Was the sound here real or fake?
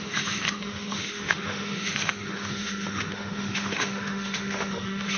fake